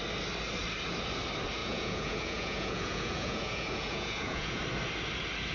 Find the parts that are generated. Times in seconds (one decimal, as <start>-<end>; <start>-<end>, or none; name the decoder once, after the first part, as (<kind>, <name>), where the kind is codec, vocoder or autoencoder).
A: 1.6-4.6 (vocoder, Vocos)